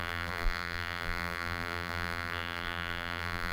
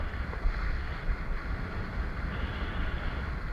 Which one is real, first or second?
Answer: second